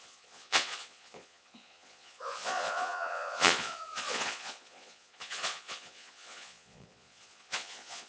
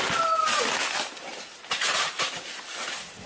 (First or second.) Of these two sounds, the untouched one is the second